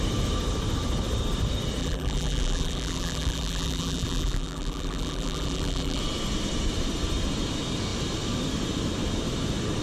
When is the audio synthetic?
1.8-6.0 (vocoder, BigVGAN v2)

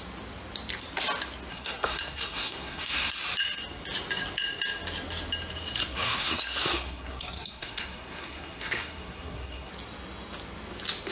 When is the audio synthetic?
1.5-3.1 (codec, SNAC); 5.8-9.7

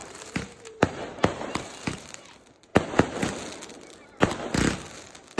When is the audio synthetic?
0.0-2.7 (vocoder, BigVGAN v2)